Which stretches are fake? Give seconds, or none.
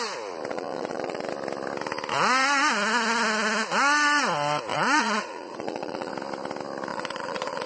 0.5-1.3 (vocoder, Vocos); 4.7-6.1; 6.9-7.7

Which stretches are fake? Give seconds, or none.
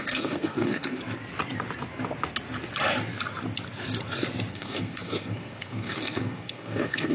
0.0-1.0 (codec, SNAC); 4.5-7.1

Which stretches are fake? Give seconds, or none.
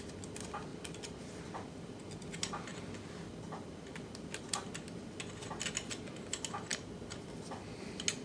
none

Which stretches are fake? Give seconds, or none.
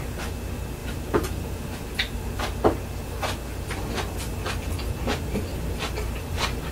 0.8-1.9 (vocoder, BigVGAN v2)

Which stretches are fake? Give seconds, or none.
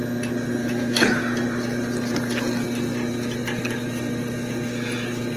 0.6-1.2 (autoencoder, DAC-VAE)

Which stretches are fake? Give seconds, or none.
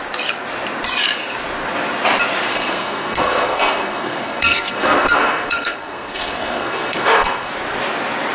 2.5-7.5 (codec, SNAC)